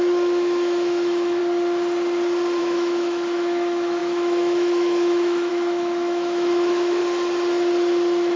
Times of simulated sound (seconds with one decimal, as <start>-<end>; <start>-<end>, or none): 0.0-1.4; 2.6-7.0